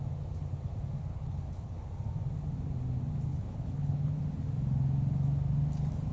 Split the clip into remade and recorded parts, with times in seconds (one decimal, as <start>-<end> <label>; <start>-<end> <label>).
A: 0.0-1.1 recorded; 1.1-1.9 remade; 1.9-3.3 recorded; 3.3-4.2 remade; 4.2-6.1 recorded